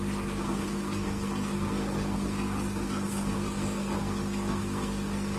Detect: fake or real fake